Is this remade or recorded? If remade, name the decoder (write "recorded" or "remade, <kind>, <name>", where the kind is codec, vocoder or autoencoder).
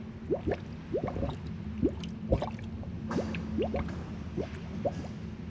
recorded